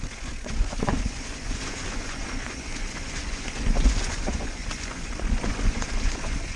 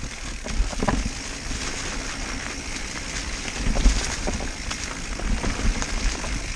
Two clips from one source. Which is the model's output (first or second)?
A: first